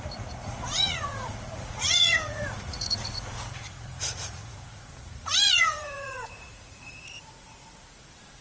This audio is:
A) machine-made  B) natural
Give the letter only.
A